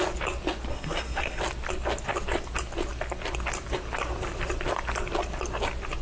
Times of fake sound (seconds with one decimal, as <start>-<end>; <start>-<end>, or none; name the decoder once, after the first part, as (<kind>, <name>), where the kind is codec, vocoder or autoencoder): 0.7-1.4 (codec, SNAC)